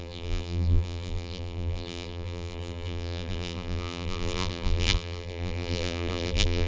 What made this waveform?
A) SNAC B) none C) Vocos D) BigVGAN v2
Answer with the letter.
D